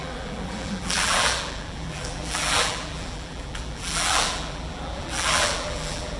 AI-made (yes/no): yes